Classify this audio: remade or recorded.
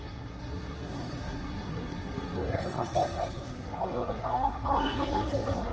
remade